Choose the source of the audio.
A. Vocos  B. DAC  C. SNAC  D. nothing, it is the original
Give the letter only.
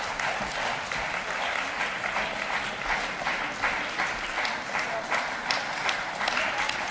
D